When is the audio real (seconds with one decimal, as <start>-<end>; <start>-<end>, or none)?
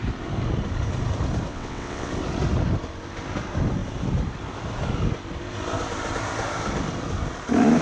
0.0-1.5; 2.1-7.8